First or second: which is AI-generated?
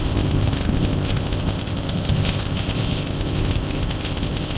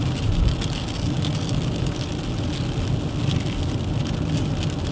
first